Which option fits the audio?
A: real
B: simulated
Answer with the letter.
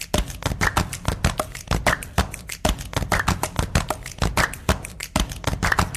A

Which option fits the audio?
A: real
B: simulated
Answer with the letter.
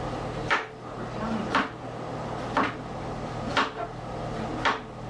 A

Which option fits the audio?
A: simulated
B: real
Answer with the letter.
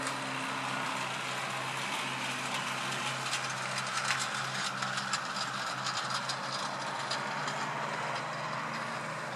B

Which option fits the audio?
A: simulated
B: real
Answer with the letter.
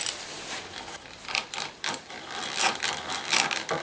A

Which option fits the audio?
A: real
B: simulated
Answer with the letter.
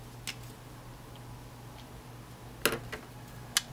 A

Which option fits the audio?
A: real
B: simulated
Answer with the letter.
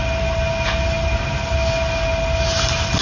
A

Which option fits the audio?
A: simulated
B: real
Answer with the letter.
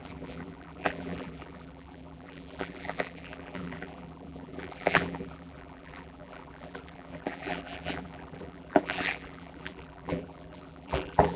A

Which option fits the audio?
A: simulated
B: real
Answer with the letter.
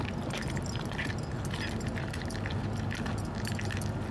B